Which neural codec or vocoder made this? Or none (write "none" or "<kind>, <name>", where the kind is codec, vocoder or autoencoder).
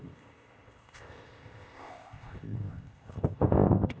codec, ZipCodec